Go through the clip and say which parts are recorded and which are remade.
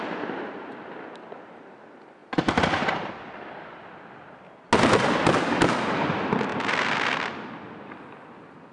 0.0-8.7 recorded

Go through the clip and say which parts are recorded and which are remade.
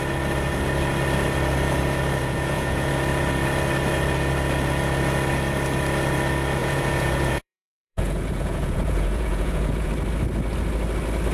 0.0-2.2 recorded; 2.2-2.9 remade; 2.9-6.6 recorded; 6.6-9.9 remade; 9.9-11.3 recorded